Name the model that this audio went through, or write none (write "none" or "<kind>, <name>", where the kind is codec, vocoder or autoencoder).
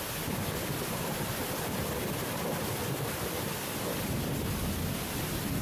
none